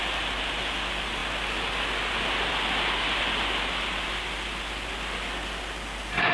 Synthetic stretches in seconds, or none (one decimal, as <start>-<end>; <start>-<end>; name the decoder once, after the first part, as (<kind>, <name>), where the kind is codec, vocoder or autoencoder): none